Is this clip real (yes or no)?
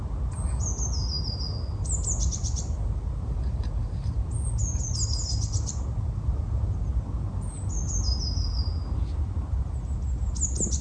yes